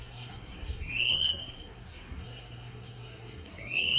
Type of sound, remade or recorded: remade